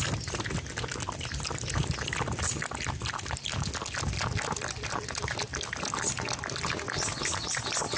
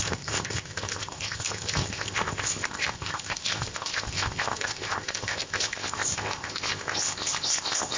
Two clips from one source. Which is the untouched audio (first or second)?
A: first